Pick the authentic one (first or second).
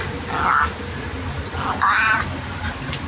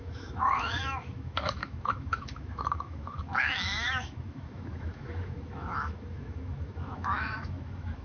first